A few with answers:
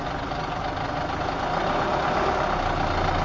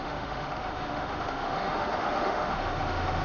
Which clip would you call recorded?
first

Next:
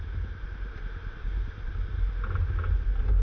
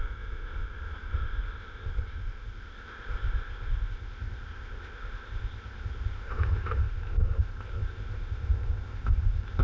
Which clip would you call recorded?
first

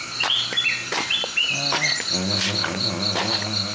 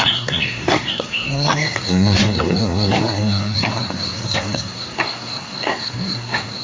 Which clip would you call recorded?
first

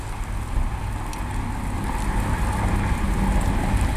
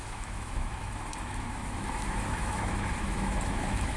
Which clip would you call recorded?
first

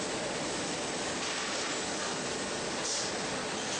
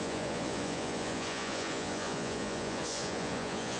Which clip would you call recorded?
first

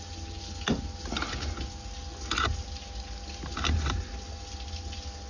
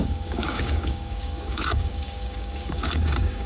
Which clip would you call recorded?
first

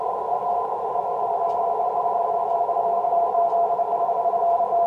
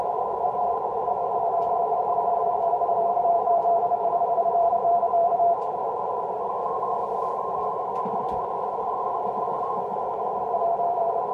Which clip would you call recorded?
first